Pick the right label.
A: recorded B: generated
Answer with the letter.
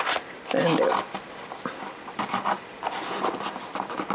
A